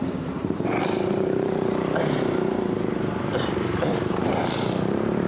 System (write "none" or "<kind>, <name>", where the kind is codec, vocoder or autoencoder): vocoder, BigVGAN v2